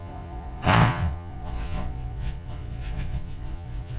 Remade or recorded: remade